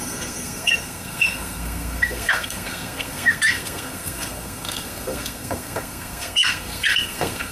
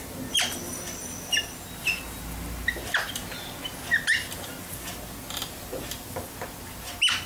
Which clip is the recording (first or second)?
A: second